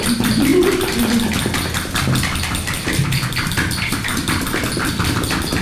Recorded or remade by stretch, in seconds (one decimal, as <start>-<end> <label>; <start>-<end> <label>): 0.0-5.6 recorded